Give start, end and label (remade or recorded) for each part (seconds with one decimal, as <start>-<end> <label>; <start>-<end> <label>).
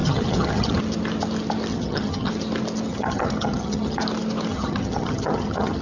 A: 0.0-0.8 remade; 0.8-1.7 recorded; 1.7-2.3 remade; 2.3-2.9 recorded; 2.9-4.0 remade; 4.0-4.5 recorded; 4.5-5.8 remade